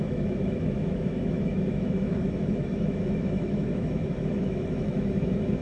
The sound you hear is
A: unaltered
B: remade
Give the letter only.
B